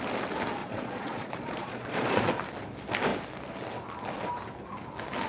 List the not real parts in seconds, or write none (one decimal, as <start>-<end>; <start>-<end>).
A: 0.6-2.3